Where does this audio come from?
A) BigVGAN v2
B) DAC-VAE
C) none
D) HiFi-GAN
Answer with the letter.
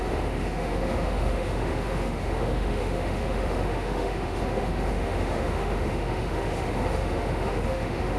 B